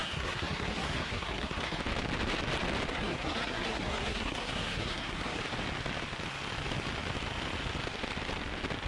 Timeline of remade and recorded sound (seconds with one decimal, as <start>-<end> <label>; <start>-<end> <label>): 0.0-1.8 remade; 1.8-2.9 recorded; 2.9-5.4 remade; 5.4-8.9 recorded